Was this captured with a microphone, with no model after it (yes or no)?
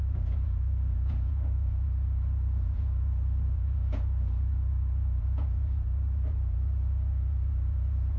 no